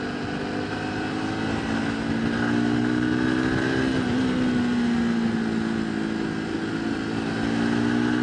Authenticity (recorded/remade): recorded